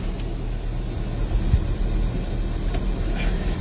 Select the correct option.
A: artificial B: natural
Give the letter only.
B